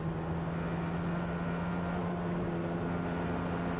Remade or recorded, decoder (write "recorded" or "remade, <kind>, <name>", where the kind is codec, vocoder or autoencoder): recorded